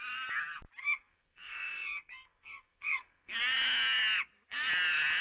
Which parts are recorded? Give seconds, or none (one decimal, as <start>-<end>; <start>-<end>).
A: 0.0-0.8; 3.4-5.2